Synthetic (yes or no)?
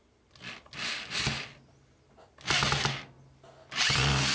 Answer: no